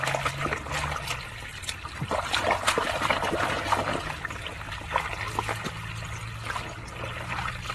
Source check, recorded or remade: recorded